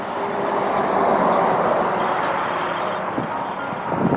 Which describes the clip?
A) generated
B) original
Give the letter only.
B